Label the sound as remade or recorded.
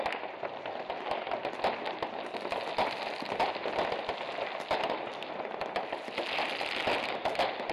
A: recorded